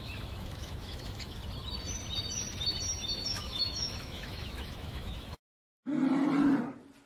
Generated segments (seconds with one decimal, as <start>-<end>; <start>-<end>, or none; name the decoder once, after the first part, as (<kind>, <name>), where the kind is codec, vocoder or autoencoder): 0.0-1.4 (autoencoder, DAC-VAE); 3.3-5.9